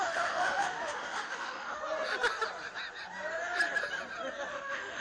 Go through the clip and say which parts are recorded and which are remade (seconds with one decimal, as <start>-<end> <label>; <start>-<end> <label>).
0.0-1.8 remade; 1.8-4.5 recorded; 4.5-5.0 remade